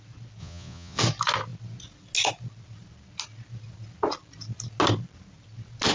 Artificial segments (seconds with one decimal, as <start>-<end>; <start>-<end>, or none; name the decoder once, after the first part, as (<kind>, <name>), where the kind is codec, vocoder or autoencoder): 0.4-1.0 (vocoder, Vocos)